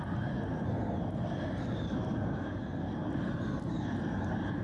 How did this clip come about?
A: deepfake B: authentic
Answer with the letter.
B